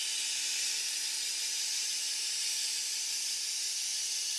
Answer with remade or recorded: recorded